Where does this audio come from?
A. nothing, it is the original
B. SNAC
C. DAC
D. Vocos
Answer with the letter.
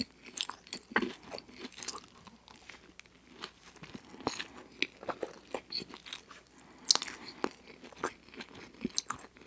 A